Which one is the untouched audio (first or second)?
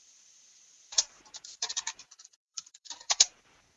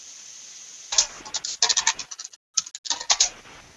second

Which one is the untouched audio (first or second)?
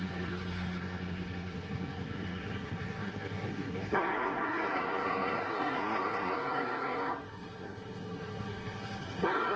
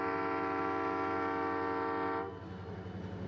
second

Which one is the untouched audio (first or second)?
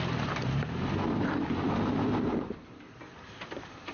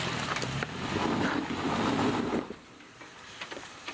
first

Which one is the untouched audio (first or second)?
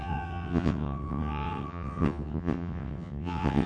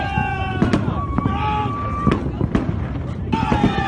second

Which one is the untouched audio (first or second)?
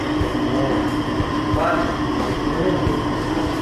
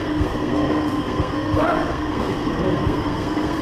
first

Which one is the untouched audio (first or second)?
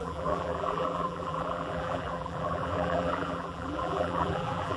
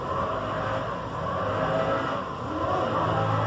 second